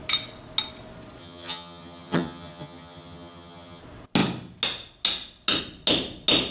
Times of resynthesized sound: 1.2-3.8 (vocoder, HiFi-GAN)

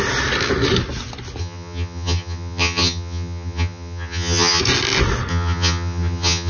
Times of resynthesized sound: 1.4-4.6 (vocoder, HiFi-GAN); 5.3-6.5

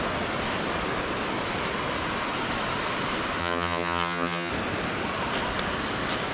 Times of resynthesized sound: 3.4-4.5 (vocoder, HiFi-GAN)

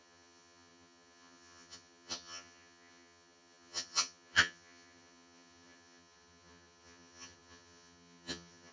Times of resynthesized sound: 0.0-8.7 (vocoder, HiFi-GAN)

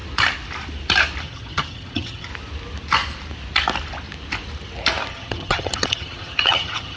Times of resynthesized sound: 1.2-2.3 (vocoder, HiFi-GAN); 5.1-7.0

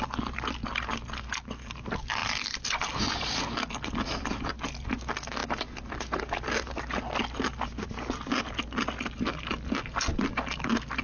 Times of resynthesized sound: none

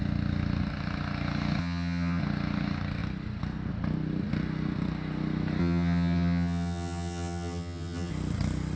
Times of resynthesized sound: 1.6-2.2 (vocoder, HiFi-GAN); 5.6-8.1